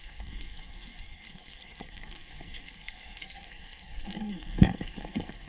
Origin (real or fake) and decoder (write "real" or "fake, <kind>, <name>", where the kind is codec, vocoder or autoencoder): fake, codec, SNAC